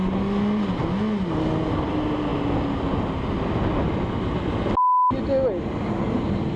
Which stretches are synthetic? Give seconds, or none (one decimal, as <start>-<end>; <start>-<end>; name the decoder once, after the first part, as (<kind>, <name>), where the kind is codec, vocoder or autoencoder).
none